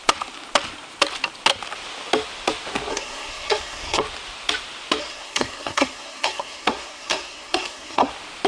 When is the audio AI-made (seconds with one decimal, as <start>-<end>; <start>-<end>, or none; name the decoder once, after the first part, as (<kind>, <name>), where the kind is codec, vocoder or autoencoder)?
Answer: 2.9-4.0 (codec, SNAC); 5.0-8.1